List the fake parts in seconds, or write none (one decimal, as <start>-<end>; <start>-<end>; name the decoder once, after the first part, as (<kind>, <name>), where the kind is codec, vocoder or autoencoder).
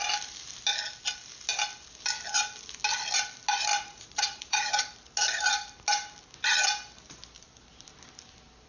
3.7-4.7 (vocoder, Vocos)